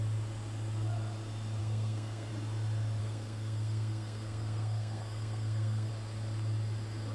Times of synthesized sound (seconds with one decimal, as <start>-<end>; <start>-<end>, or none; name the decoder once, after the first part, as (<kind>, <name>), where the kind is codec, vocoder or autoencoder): 1.6-2.3 (codec, SNAC); 3.0-5.9

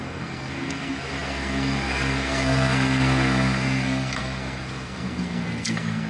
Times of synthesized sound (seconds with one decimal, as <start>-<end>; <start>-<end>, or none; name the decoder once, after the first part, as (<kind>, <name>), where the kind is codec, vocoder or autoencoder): 0.0-6.1 (codec, SNAC)

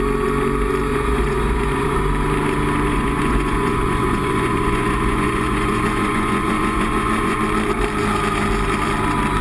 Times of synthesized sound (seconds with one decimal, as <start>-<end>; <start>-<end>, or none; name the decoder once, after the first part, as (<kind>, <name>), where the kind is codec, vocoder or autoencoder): 0.9-2.0 (vocoder, Vocos); 2.9-7.4

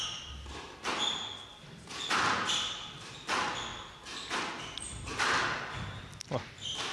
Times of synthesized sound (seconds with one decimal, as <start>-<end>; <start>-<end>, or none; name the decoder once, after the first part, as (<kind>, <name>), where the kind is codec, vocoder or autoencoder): none

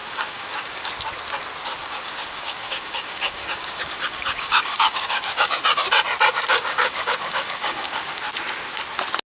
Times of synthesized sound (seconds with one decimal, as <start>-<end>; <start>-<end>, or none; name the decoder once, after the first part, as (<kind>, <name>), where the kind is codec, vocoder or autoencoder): 0.0-0.9 (codec, DAC); 1.8-5.5; 6.5-8.2

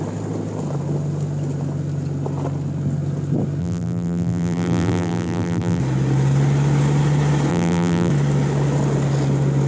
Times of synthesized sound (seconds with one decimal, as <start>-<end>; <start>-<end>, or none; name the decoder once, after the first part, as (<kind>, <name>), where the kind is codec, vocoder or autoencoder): 3.6-5.8 (vocoder, BigVGAN v2); 7.5-8.1

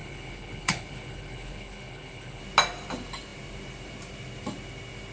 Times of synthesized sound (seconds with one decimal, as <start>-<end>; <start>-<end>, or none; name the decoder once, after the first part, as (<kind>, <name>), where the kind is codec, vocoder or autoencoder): 0.0-2.4 (codec, HILCodec)